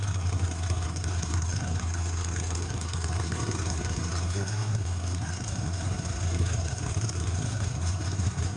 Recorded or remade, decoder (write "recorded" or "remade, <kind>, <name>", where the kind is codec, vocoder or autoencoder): remade, codec, SNAC